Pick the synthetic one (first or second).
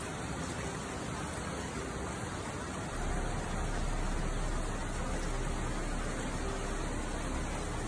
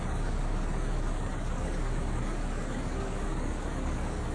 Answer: second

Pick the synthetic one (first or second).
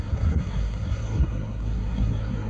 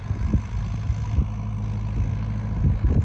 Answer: first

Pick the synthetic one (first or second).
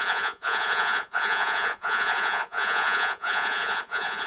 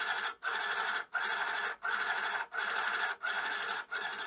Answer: first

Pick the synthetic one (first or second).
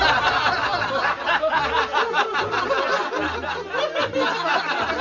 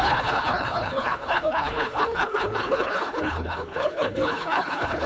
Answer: second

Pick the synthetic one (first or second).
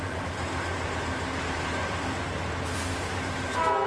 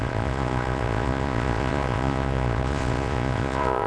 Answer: second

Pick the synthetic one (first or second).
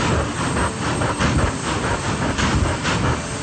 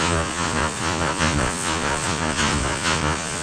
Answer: second